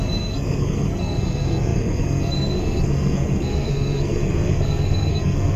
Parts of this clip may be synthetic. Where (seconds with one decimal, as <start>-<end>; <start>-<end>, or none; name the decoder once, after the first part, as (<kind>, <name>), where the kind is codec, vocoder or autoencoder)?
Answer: 0.0-5.6 (codec, SNAC)